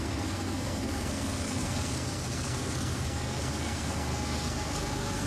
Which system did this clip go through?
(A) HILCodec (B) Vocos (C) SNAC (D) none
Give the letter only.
C